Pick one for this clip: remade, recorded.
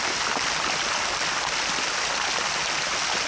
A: recorded